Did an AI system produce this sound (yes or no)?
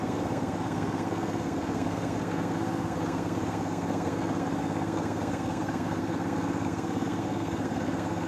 yes